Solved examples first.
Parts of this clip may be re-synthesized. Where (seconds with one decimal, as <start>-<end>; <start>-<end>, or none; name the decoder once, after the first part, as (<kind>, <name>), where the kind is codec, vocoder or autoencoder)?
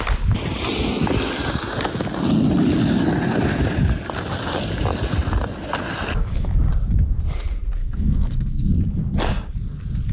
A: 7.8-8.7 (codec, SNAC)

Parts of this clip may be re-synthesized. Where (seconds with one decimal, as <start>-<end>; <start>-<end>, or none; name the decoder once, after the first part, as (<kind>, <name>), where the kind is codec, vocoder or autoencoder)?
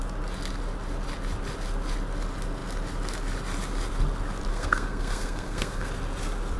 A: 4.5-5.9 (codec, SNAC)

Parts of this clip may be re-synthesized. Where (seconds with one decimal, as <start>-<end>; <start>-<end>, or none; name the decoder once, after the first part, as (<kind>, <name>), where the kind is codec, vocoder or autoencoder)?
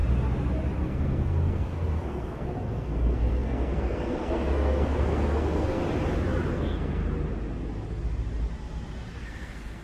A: 0.8-5.8 (codec, SNAC); 6.5-7.0; 9.2-9.8